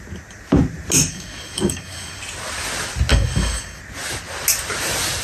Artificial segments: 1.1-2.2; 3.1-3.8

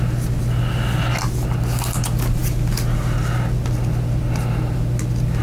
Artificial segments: none

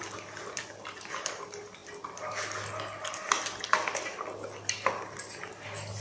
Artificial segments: none

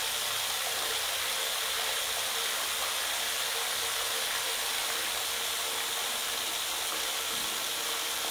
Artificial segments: none

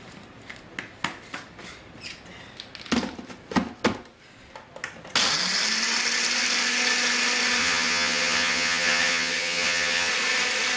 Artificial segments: 7.6-10.1

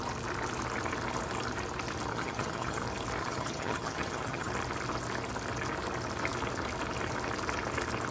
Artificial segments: 2.1-2.8; 3.2-4.5

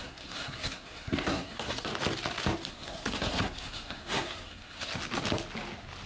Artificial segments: 0.0-1.9; 2.7-4.9